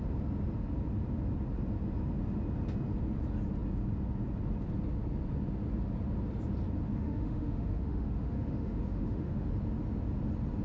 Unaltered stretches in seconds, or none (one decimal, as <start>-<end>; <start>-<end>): 0.0-6.9; 9.5-10.6